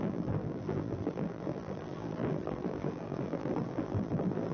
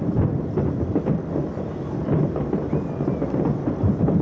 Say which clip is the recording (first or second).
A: second